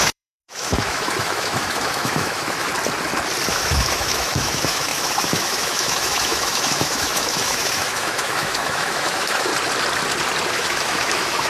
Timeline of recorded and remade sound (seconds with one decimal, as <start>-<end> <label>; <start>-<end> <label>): 0.0-2.7 remade; 2.7-3.5 recorded; 3.5-9.5 remade; 9.5-10.5 recorded; 10.5-11.5 remade